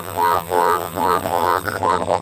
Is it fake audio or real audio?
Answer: fake